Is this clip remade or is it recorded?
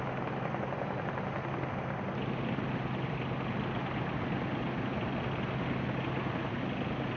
recorded